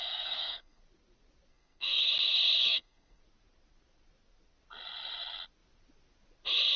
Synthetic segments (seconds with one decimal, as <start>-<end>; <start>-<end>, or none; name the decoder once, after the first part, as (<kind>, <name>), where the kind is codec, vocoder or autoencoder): 0.0-0.8 (codec, SNAC); 1.5-2.1; 2.6-3.2